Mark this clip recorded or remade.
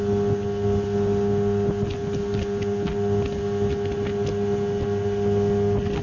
recorded